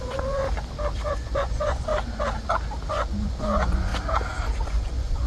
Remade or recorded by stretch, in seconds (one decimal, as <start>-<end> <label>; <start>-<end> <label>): 0.0-0.4 remade; 0.4-1.1 recorded; 1.1-1.9 remade; 1.9-2.9 recorded; 2.9-3.9 remade; 3.9-4.6 recorded; 4.6-5.3 remade